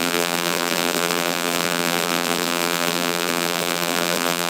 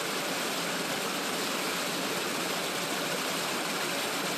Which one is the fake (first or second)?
first